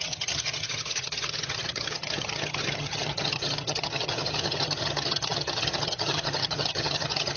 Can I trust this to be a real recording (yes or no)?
no